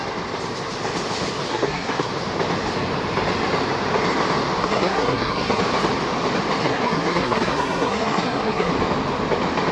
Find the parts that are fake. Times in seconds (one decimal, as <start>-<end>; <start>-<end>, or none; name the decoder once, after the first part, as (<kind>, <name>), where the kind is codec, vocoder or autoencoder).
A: 1.5-2.1 (codec, SNAC); 4.6-5.6; 6.6-8.7